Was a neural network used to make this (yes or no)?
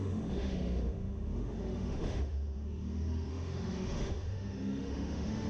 yes